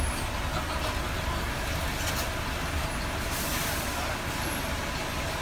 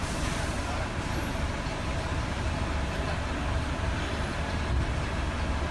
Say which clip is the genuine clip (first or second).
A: first